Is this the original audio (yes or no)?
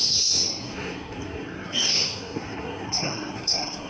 no